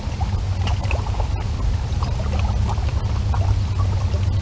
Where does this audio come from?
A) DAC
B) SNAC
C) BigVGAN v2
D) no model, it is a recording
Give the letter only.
D